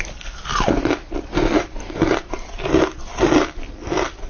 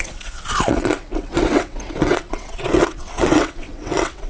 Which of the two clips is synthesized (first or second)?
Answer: second